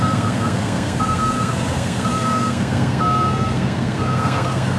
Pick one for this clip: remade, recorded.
remade